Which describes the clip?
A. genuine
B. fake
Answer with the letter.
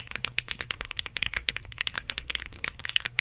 B